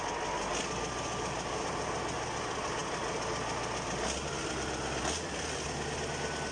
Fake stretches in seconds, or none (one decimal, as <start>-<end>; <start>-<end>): none